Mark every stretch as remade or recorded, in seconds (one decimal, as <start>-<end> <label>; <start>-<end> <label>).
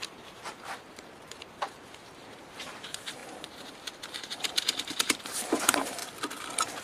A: 0.0-6.0 remade; 6.0-6.8 recorded